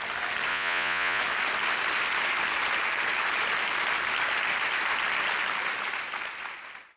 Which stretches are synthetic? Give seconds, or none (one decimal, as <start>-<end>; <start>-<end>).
0.5-1.2